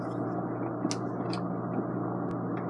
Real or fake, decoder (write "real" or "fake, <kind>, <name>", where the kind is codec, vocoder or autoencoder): real